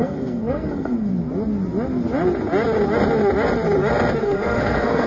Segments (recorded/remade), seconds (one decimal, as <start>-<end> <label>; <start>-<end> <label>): 0.0-1.1 remade; 1.1-4.2 recorded; 4.2-5.1 remade